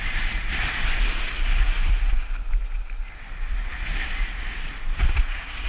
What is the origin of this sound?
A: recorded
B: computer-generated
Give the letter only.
A